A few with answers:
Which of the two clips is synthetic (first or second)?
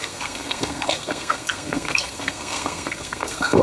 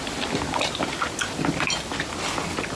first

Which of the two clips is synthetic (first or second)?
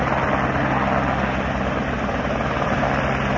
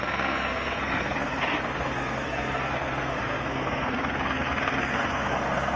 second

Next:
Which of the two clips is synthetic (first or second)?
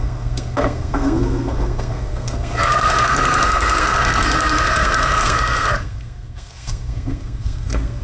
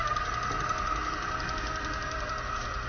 first